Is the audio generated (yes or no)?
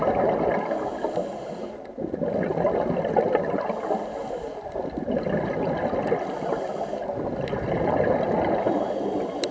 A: no